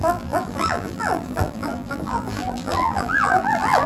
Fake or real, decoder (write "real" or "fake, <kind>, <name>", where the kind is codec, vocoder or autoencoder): fake, vocoder, BigVGAN v2